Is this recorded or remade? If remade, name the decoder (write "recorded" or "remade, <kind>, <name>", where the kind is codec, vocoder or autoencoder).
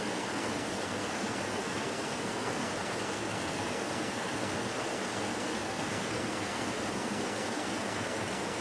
remade, codec, SNAC